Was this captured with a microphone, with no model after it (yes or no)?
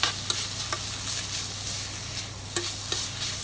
yes